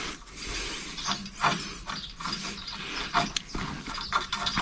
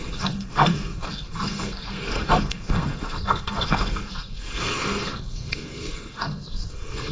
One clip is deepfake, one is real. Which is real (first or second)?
first